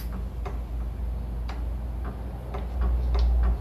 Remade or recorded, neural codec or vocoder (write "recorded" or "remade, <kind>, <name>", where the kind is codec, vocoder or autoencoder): recorded